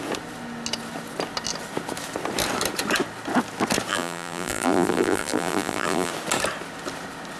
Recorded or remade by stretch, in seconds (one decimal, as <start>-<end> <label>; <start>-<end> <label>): 0.0-3.9 recorded; 3.9-6.1 remade; 6.1-7.4 recorded